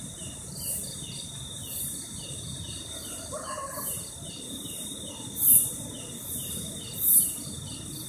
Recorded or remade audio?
remade